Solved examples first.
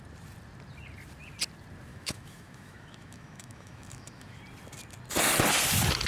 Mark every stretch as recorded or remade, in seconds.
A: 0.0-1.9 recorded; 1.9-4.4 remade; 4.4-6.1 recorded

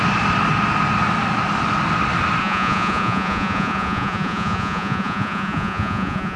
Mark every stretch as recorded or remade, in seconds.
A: 0.0-2.4 recorded; 2.4-6.4 remade

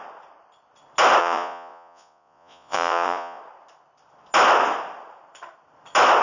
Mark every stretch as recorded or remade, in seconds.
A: 0.0-1.2 recorded; 1.2-3.4 remade; 3.4-6.2 recorded

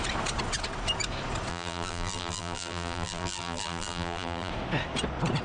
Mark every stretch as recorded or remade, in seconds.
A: 0.0-1.5 recorded; 1.5-4.5 remade; 4.5-5.4 recorded